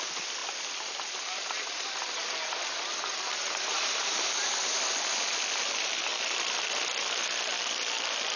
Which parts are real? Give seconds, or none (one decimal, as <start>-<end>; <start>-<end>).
0.0-8.4